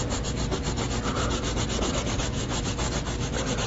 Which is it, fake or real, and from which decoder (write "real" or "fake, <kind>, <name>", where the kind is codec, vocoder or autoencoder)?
real